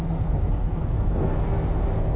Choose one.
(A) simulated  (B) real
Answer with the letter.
A